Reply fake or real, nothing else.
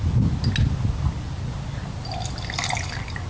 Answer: real